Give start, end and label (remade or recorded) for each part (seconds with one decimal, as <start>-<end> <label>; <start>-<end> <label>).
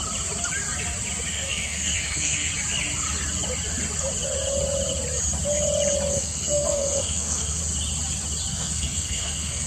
0.0-1.3 recorded; 1.3-2.5 remade; 2.5-6.1 recorded; 6.1-7.6 remade; 7.6-8.5 recorded; 8.5-9.7 remade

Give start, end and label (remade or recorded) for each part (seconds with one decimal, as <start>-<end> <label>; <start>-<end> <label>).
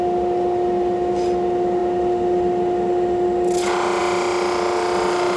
0.0-5.4 recorded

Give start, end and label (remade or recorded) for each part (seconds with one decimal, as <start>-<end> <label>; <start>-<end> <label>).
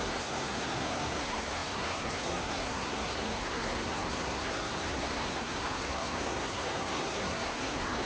0.0-8.1 remade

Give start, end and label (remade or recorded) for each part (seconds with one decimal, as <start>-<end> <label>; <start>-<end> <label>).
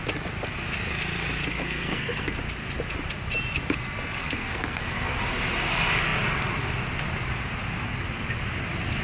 0.0-1.5 recorded; 1.5-2.4 remade; 2.4-4.2 recorded; 4.2-5.2 remade; 5.2-9.0 recorded